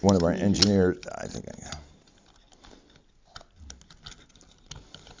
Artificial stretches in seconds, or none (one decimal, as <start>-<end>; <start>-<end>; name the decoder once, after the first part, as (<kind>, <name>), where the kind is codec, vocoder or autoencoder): none

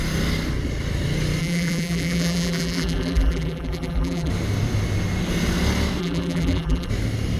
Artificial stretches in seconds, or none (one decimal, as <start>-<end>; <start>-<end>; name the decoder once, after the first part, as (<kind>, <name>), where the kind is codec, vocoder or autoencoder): 1.4-4.3 (vocoder, BigVGAN v2); 6.0-6.9

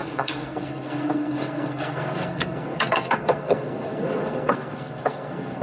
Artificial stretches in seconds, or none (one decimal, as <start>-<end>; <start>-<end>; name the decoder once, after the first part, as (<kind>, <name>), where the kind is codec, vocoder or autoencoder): 0.0-5.6 (codec, SNAC)

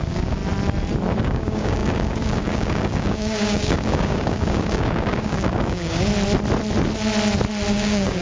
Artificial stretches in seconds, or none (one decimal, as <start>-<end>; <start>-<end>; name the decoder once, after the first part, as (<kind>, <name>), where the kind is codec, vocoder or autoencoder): 0.0-0.4 (codec, DAC); 1.2-6.1; 7.7-8.2